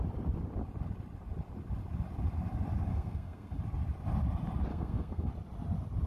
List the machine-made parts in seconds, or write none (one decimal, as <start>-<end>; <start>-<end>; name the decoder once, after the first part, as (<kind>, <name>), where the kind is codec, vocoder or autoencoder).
2.9-3.6 (codec, SNAC); 4.7-5.3